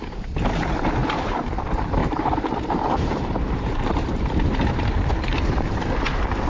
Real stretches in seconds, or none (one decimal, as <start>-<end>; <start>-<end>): 0.0-1.0; 1.5-2.0; 5.8-6.5